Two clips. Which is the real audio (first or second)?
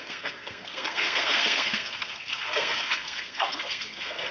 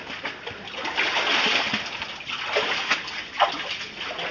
second